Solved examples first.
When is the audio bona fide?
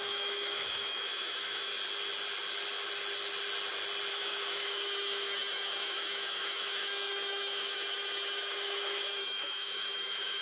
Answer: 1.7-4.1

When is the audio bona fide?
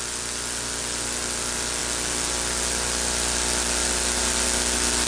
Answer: 0.0-5.1